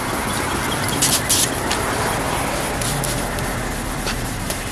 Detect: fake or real real